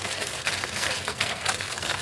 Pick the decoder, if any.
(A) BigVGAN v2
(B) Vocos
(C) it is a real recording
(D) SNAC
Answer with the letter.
D